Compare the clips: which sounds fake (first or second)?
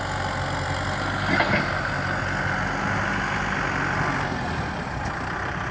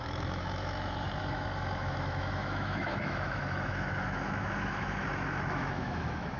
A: second